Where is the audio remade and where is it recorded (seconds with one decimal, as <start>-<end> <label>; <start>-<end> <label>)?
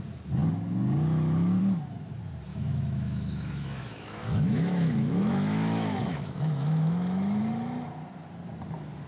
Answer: 0.0-2.5 recorded; 2.5-7.4 remade; 7.4-9.1 recorded